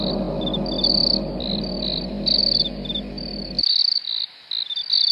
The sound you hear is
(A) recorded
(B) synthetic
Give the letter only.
A